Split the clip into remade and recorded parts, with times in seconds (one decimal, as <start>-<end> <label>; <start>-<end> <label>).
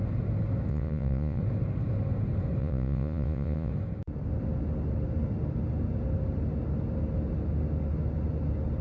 0.0-0.7 recorded; 0.7-1.4 remade; 1.4-2.6 recorded; 2.6-3.7 remade; 3.7-8.8 recorded